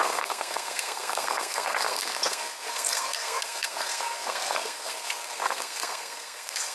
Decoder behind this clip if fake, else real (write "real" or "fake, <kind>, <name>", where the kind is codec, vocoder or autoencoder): fake, codec, SNAC